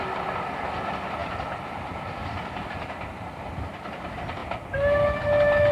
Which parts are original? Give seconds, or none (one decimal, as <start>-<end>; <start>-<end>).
0.0-5.7